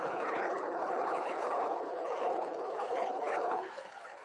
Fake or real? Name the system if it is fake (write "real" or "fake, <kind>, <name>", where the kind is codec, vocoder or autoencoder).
fake, codec, HILCodec